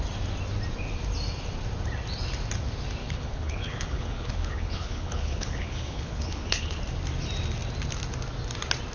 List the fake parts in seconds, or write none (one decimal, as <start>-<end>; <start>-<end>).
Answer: 3.0-6.8